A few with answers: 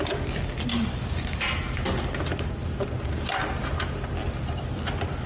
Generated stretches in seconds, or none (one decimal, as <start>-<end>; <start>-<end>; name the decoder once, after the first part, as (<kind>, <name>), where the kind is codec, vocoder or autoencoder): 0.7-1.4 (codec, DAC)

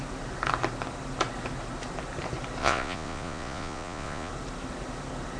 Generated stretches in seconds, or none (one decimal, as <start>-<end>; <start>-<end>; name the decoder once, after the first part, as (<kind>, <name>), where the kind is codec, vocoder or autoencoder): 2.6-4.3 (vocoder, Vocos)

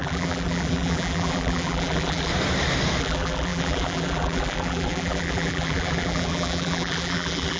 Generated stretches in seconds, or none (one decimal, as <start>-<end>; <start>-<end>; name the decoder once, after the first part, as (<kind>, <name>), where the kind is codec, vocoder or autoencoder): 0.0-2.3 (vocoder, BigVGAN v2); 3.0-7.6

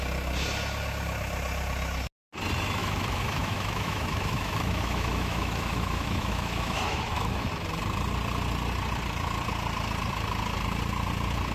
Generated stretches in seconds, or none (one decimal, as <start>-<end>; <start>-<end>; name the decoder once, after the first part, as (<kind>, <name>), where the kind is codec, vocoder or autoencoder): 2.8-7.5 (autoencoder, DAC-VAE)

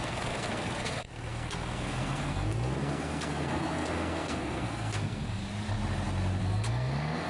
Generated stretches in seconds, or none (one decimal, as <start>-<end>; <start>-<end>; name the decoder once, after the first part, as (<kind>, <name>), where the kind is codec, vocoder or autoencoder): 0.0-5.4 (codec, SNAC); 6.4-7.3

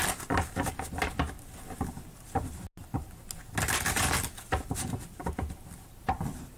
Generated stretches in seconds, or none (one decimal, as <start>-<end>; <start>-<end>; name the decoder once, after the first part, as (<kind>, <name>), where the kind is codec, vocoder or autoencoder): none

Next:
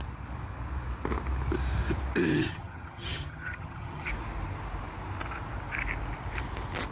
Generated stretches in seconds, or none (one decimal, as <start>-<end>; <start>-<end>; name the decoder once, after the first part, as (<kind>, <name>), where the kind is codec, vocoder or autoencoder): 2.3-4.1 (vocoder, HiFi-GAN)